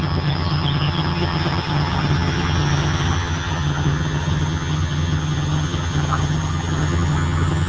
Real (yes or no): no